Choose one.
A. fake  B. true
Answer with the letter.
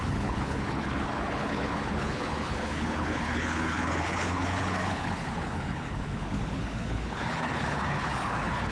A